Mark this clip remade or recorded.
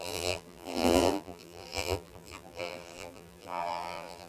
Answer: remade